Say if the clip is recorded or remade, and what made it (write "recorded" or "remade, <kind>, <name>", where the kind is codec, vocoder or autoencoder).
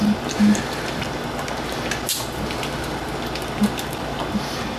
recorded